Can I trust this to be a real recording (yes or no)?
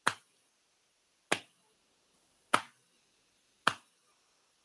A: yes